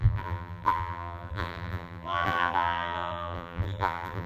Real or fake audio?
fake